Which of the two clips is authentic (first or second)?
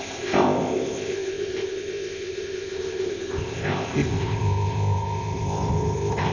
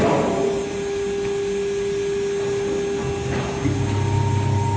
second